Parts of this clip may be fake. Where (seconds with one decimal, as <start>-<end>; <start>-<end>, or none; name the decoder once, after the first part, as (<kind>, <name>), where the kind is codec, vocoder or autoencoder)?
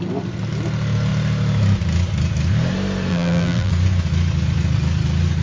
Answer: 3.1-3.7 (vocoder, BigVGAN v2)